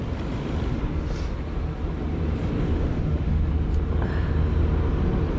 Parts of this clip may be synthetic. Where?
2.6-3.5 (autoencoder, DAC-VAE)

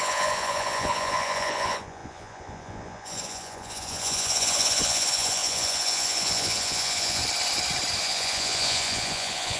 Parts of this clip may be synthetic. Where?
0.0-7.2 (vocoder, Vocos); 8.0-9.6